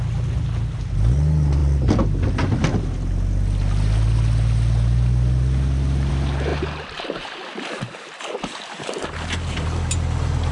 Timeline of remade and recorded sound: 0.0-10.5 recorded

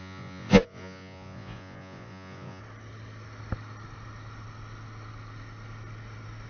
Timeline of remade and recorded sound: 0.0-2.6 remade; 2.6-6.5 recorded

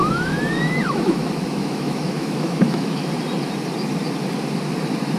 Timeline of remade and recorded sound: 0.0-3.1 remade; 3.1-5.2 recorded